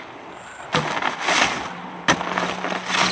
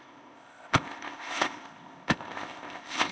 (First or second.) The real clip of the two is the first